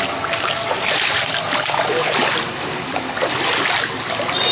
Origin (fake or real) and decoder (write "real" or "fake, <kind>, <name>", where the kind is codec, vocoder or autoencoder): real